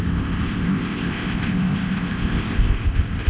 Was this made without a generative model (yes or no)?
no